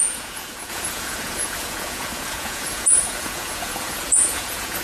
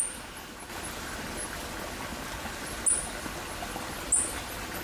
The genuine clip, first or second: second